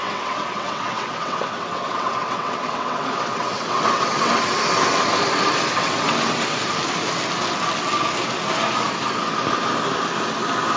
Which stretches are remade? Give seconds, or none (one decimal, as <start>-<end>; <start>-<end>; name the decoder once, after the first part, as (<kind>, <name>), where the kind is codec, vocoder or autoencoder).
0.0-4.5 (vocoder, WaveNeXt); 5.8-6.6